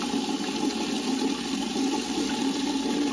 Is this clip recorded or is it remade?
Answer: recorded